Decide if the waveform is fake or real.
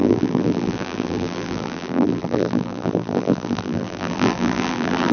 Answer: fake